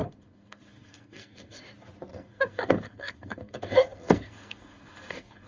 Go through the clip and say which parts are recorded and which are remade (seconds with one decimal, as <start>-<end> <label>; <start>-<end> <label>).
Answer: 0.0-1.6 remade; 1.6-2.1 recorded; 2.1-5.5 remade